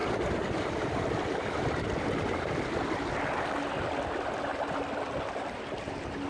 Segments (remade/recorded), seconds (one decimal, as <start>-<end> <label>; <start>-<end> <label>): 0.0-6.3 recorded